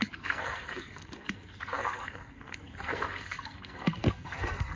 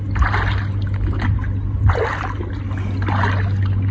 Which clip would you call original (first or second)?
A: second